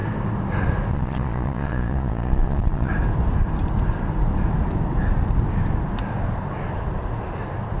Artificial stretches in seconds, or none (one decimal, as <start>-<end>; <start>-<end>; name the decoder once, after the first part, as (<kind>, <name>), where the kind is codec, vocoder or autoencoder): 0.9-2.9 (vocoder, Vocos)